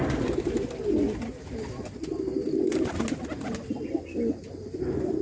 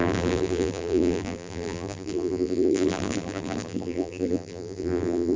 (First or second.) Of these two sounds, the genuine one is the first